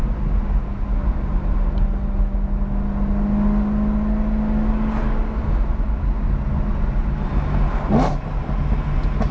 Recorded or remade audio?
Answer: recorded